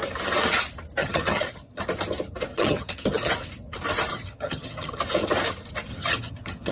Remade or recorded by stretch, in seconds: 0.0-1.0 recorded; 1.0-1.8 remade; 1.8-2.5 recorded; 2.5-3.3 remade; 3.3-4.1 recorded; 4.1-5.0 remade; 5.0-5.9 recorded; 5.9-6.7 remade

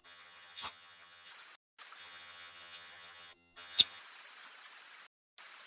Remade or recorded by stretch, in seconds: 0.0-1.3 remade; 1.3-2.0 recorded; 2.0-4.0 remade; 4.0-5.7 recorded

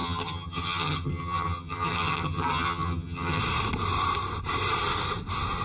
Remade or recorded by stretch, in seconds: 0.0-3.4 remade; 3.4-5.6 recorded

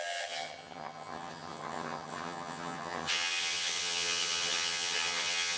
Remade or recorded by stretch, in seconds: 0.0-5.6 remade

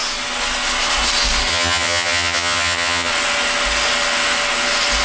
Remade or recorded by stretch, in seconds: 0.0-1.5 recorded; 1.5-3.1 remade; 3.1-5.0 recorded

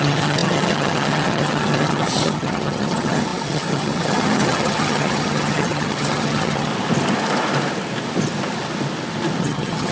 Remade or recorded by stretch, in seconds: 0.0-6.7 remade; 6.7-9.4 recorded; 9.4-9.9 remade